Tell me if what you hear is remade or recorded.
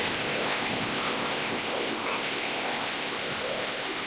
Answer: remade